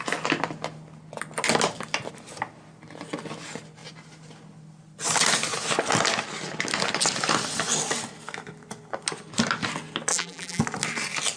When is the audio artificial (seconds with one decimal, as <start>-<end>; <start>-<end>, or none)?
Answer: 10.1-10.6